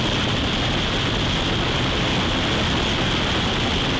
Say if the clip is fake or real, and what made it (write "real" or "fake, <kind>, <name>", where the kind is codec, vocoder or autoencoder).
real